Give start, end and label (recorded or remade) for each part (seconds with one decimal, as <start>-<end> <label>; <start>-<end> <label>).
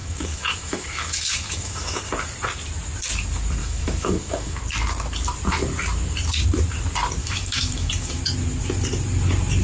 0.0-2.1 remade; 2.1-3.6 recorded; 3.6-4.6 remade; 4.6-7.2 recorded; 7.2-8.2 remade; 8.2-9.6 recorded